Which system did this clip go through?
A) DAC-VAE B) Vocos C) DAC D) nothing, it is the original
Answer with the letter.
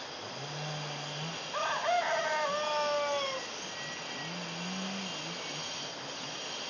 D